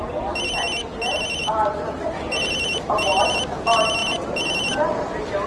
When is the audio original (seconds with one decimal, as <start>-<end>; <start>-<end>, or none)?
0.0-1.1; 3.2-4.0